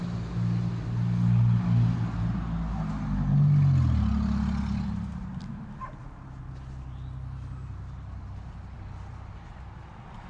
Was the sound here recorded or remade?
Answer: recorded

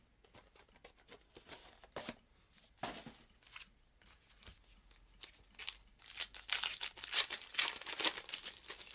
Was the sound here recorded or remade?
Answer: recorded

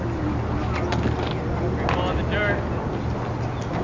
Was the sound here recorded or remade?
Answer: recorded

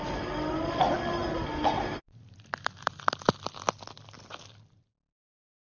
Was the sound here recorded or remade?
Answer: recorded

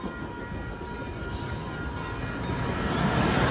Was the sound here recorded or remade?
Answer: recorded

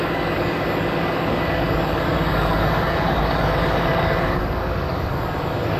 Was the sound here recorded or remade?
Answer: remade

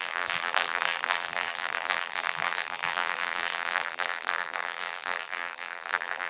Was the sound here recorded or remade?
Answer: remade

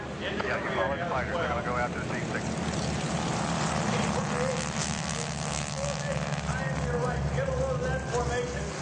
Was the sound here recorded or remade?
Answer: recorded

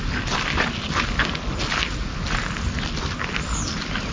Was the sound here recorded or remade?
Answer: recorded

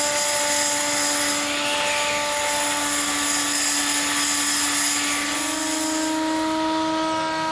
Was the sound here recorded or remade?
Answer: recorded